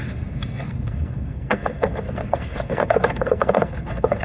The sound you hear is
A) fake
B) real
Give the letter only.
A